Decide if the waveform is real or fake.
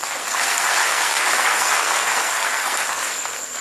fake